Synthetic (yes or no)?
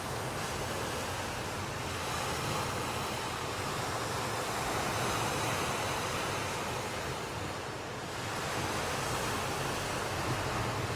no